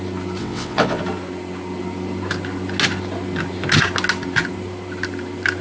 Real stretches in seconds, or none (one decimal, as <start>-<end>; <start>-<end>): 0.0-0.4; 1.0-5.6